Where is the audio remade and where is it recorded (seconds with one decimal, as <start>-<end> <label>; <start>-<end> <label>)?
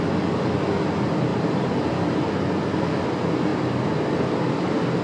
0.0-1.3 recorded; 1.3-2.3 remade; 2.3-5.0 recorded